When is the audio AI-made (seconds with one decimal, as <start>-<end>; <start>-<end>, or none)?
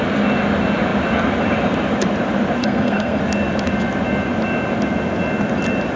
2.6-3.2